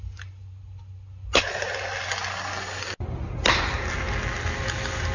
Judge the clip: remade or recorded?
recorded